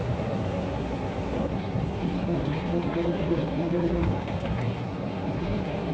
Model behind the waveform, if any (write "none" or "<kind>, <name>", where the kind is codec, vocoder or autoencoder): codec, SNAC